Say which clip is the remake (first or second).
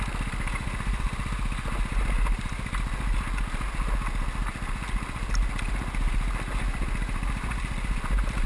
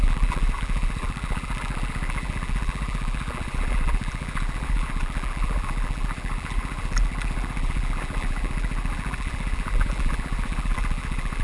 second